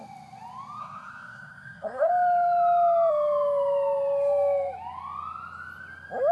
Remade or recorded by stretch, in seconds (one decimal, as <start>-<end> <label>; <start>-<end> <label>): 0.0-0.8 recorded; 0.8-2.1 remade; 2.1-6.3 recorded